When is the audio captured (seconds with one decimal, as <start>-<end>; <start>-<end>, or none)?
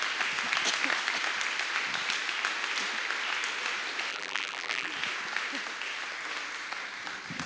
0.0-4.1; 4.9-7.5